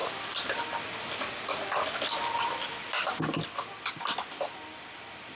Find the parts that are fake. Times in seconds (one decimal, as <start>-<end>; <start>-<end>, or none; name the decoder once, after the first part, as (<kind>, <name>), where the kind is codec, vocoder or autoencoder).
none